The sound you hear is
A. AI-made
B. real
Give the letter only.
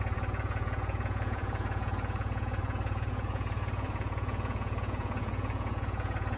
A